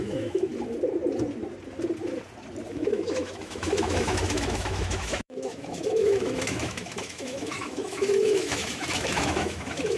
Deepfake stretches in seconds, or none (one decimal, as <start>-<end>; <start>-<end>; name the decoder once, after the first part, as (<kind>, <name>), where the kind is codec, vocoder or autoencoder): 0.0-0.5 (autoencoder, DAC-VAE); 2.7-10.0